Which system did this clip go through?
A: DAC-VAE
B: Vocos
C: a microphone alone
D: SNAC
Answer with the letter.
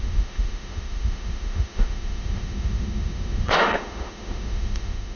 A